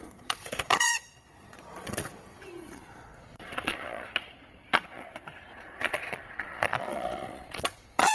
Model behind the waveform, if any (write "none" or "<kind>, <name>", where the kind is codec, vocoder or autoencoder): vocoder, Vocos